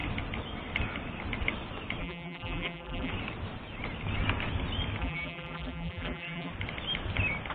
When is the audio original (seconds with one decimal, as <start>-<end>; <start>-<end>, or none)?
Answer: 0.0-2.0; 3.1-5.0; 6.5-7.5

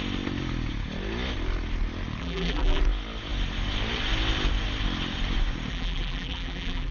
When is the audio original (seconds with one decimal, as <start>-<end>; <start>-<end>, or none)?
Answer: 0.0-2.2; 2.8-5.7